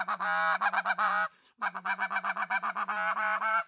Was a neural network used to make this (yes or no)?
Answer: no